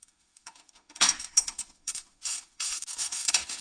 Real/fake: fake